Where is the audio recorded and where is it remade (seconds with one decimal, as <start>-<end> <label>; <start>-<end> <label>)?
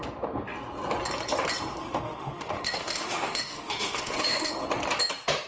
0.0-1.8 recorded; 1.8-4.5 remade; 4.5-5.5 recorded